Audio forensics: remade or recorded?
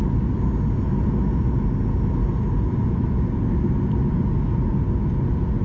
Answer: recorded